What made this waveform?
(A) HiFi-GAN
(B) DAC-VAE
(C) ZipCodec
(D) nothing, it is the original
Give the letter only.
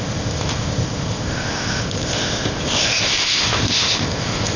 C